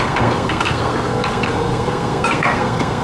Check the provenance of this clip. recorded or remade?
remade